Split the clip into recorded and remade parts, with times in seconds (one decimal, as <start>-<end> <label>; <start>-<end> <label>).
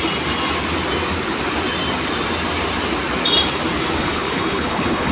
0.0-4.0 recorded; 4.0-5.1 remade